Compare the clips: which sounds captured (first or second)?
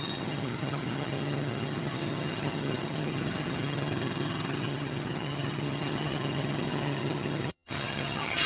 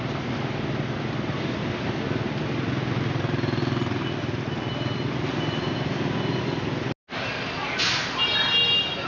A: second